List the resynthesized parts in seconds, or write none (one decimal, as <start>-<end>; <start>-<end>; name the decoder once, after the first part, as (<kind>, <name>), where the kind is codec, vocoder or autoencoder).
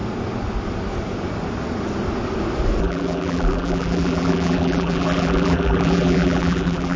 2.8-7.0 (vocoder, BigVGAN v2)